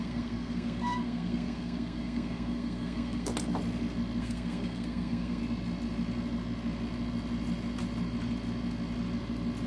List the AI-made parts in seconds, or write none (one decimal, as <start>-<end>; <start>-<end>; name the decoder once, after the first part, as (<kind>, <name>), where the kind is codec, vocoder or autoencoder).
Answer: 0.0-3.3 (codec, SNAC); 4.2-5.4